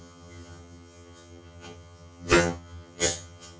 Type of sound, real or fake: fake